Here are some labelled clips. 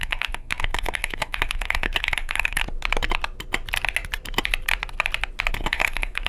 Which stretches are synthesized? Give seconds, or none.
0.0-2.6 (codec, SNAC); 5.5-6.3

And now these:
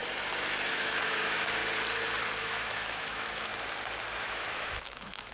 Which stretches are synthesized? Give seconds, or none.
0.7-1.6 (autoencoder, DAC-VAE); 2.4-3.5; 4.2-5.3

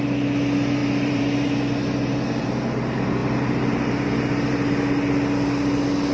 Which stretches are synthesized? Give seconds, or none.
0.8-2.1 (vocoder, BigVGAN v2)

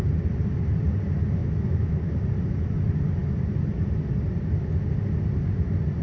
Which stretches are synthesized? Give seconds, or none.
1.4-2.1 (autoencoder, DAC-VAE)

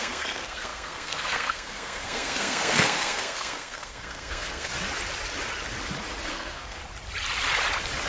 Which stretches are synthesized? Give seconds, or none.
0.0-4.7 (codec, SNAC); 6.3-6.8

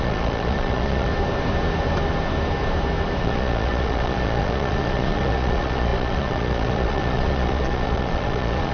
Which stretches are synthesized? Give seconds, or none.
0.0-1.1 (vocoder, Vocos); 3.2-8.7